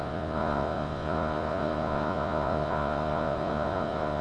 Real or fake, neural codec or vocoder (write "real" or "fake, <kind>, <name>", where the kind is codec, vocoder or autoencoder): fake, vocoder, Vocos